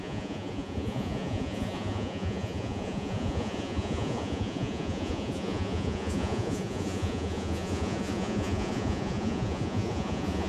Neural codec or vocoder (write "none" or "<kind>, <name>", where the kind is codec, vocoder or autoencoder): vocoder, Vocos